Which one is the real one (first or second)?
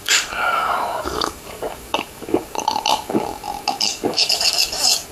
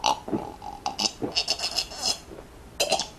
second